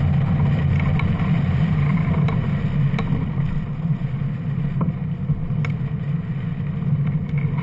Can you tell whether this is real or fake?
real